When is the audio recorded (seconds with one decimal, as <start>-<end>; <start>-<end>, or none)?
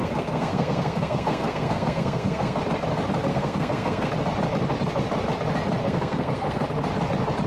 2.6-3.3; 4.1-5.8; 6.7-7.5